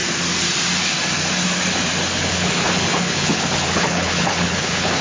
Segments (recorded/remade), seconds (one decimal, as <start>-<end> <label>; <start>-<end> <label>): 0.0-2.3 recorded; 2.3-5.0 remade

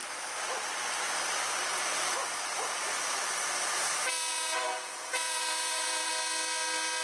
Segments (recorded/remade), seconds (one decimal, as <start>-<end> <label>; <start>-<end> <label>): 0.0-4.3 recorded; 4.3-6.1 remade; 6.1-7.0 recorded

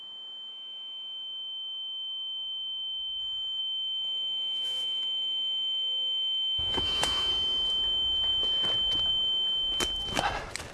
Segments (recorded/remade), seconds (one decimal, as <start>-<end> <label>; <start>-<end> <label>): 0.0-0.5 recorded; 0.5-3.2 remade; 3.2-3.6 recorded; 3.6-7.3 remade; 7.3-10.7 recorded

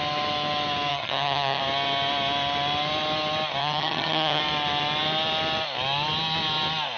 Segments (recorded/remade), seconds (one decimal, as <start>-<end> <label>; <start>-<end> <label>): 0.0-0.9 recorded; 0.9-1.6 remade; 1.6-3.6 recorded; 3.6-4.4 remade; 4.4-7.0 recorded